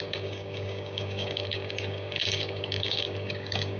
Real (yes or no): no